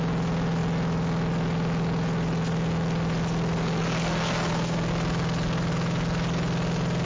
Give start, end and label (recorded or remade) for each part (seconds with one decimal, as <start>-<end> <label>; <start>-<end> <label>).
0.0-7.1 recorded